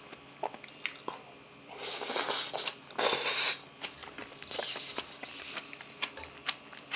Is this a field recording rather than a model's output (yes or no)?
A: yes